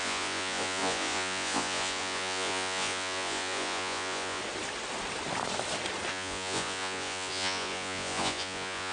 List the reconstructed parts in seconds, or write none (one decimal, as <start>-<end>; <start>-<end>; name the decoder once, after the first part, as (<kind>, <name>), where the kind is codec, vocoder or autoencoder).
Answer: 0.0-4.4 (vocoder, Vocos); 6.1-8.9